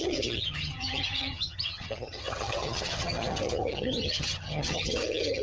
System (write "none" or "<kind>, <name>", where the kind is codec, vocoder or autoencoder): vocoder, HiFi-GAN